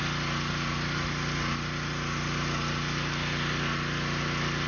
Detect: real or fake real